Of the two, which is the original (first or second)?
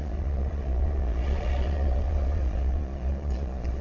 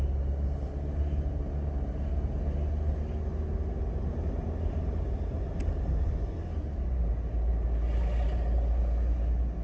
second